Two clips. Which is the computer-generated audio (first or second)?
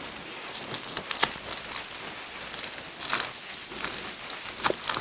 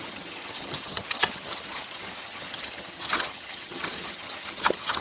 second